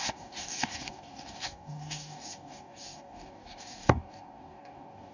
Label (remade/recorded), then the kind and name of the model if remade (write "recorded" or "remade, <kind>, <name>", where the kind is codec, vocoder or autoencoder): remade, codec, DAC